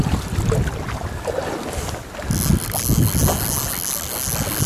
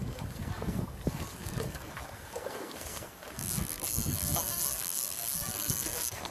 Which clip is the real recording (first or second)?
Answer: first